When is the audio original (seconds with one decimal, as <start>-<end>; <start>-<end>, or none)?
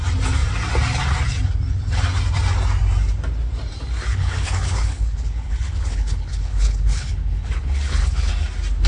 0.0-4.1; 8.3-8.9